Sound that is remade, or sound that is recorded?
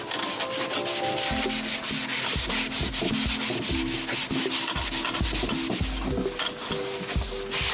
recorded